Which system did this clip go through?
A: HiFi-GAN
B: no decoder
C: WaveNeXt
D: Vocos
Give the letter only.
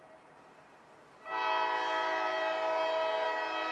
B